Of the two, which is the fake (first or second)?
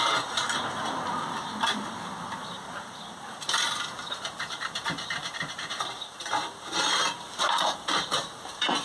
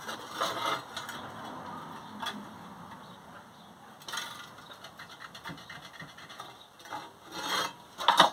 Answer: first